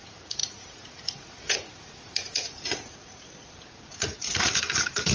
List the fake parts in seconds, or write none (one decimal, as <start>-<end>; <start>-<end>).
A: 0.0-5.1